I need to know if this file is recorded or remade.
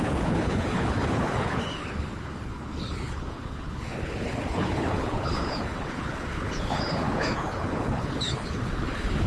remade